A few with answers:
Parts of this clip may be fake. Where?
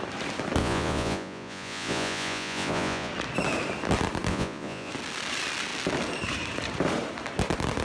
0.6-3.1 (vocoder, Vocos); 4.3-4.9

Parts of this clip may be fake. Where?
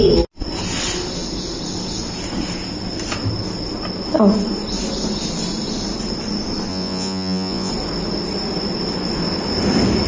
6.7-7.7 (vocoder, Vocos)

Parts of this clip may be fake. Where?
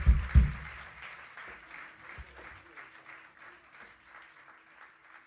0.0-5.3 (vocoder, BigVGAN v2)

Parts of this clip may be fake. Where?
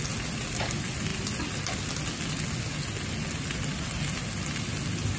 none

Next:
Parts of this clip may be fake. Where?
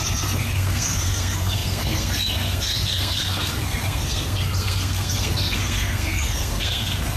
0.0-7.2 (codec, SNAC)